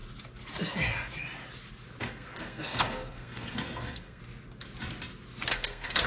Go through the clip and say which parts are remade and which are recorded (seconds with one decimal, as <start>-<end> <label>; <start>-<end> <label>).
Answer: 0.0-2.0 recorded; 2.0-4.2 remade; 4.2-5.5 recorded; 5.5-6.1 remade

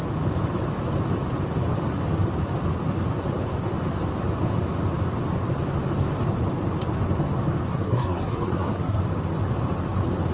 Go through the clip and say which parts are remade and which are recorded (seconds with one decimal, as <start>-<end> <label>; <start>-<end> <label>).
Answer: 0.0-7.7 recorded; 7.7-9.0 remade; 9.0-10.3 recorded

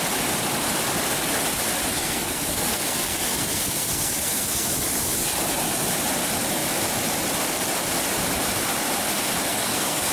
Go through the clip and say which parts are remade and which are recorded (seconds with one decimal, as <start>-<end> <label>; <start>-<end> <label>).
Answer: 0.0-1.9 recorded; 1.9-4.7 remade; 4.7-9.5 recorded; 9.5-10.1 remade

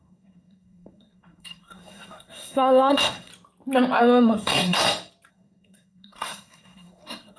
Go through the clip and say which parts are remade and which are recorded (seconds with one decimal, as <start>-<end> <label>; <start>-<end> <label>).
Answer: 0.0-3.3 remade; 3.3-4.0 recorded; 4.0-4.8 remade; 4.8-5.3 recorded; 5.3-7.4 remade

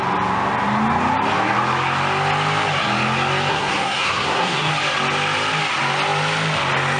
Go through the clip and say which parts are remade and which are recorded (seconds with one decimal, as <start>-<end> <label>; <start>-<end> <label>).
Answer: 0.0-3.5 recorded; 3.5-4.7 remade; 4.7-7.0 recorded

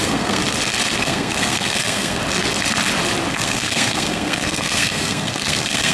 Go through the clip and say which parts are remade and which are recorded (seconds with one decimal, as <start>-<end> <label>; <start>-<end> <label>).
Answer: 0.0-0.4 remade; 0.4-1.0 recorded; 1.0-2.2 remade; 2.2-3.3 recorded; 3.3-5.9 remade

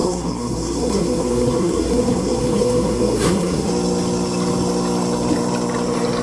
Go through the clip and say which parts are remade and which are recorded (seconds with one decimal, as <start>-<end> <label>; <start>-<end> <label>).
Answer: 0.0-3.7 remade; 3.7-6.2 recorded